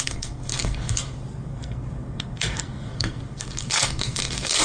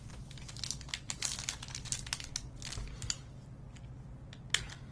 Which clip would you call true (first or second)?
second